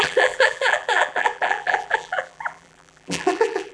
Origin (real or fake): fake